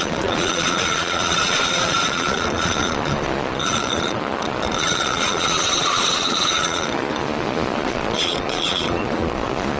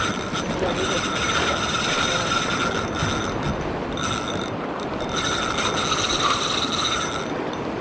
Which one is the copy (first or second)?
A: first